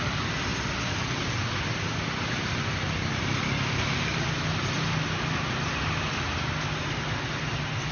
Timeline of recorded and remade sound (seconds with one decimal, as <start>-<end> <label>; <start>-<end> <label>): 0.0-7.9 recorded